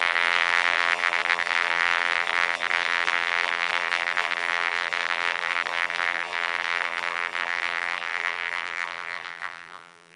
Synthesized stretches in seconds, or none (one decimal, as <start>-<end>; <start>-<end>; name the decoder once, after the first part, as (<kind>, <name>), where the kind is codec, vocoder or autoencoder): 0.0-10.2 (vocoder, BigVGAN v2)